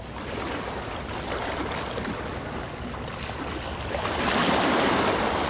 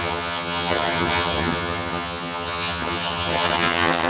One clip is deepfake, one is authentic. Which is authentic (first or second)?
first